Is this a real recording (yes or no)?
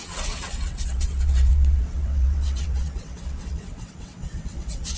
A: no